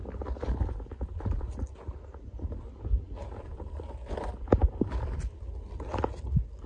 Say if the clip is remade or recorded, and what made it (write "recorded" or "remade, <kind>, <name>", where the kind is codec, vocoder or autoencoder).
recorded